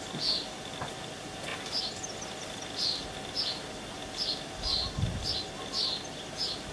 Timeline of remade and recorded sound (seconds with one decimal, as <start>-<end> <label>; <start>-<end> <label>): 0.0-6.7 recorded